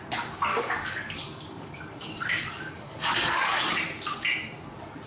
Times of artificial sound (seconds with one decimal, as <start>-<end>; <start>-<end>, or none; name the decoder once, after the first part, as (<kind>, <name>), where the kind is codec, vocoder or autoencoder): 0.5-3.6 (codec, DAC)